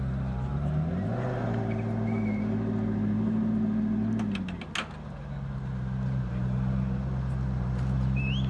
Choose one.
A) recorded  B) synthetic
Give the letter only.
A